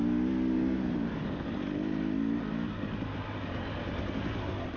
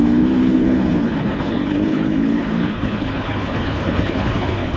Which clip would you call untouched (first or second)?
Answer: first